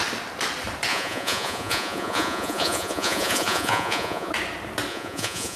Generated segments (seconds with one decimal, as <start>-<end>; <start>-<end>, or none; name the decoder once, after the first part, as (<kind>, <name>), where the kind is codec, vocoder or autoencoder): 0.9-4.3 (vocoder, Vocos); 4.9-5.6